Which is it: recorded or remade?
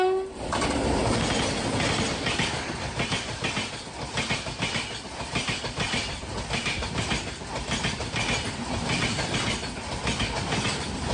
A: recorded